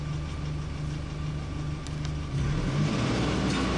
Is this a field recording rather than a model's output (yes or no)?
yes